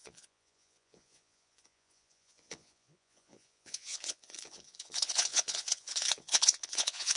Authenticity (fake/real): fake